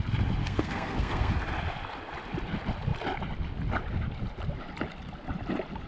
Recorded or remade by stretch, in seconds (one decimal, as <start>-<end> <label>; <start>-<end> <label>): 0.0-0.4 recorded; 0.4-1.3 remade; 1.3-5.9 recorded